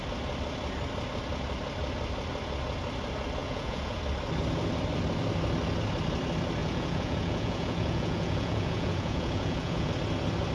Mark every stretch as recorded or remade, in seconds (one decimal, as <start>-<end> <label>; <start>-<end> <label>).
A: 0.0-3.4 recorded; 3.4-4.0 remade; 4.0-6.6 recorded; 6.6-9.9 remade; 9.9-10.5 recorded